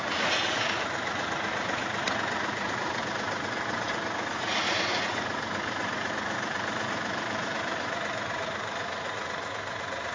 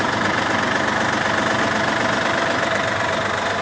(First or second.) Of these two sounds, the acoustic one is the second